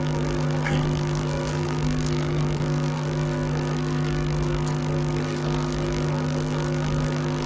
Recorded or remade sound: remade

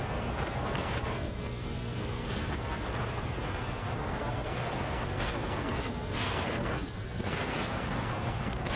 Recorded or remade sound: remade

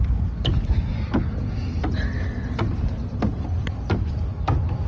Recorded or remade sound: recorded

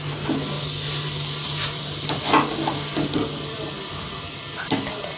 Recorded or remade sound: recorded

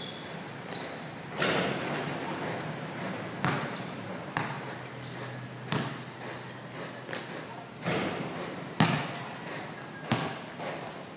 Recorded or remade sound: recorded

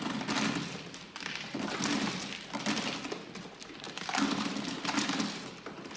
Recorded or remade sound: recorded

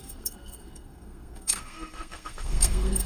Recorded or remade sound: remade